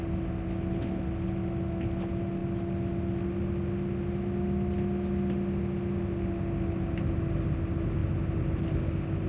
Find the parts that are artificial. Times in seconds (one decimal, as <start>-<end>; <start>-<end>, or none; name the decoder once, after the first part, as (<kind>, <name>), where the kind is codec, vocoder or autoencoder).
none

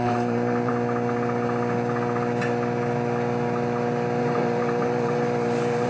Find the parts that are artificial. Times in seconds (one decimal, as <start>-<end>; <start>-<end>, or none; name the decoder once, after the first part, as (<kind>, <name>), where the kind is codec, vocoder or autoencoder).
0.0-0.7 (vocoder, BigVGAN v2); 4.2-5.9